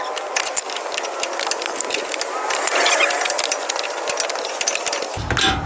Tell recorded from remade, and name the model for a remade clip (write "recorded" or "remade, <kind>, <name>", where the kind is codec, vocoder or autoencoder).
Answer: recorded